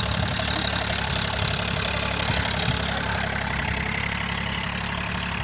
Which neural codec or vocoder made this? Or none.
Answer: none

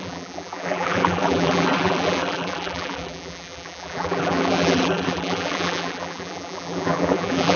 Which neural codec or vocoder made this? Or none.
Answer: vocoder, BigVGAN v2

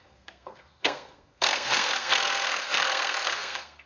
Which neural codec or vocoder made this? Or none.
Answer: codec, SNAC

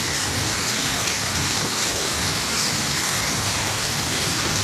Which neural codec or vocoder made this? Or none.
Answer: codec, DAC